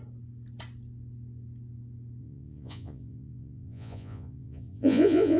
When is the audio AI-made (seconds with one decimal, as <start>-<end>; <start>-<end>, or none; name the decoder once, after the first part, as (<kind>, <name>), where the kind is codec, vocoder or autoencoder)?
2.2-5.4 (vocoder, Vocos)